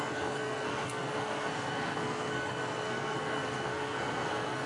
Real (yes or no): no